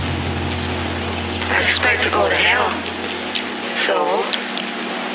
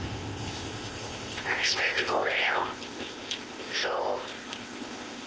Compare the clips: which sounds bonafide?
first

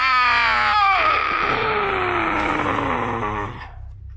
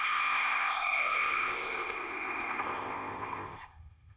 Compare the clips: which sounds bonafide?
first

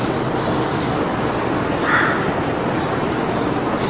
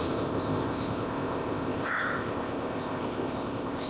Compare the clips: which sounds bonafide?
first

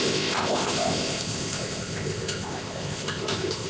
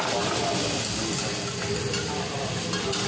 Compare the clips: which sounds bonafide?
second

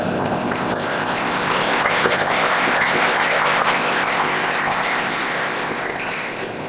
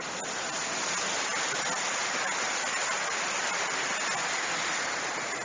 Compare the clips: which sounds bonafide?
second